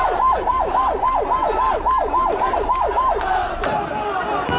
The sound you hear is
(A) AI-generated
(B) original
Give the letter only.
B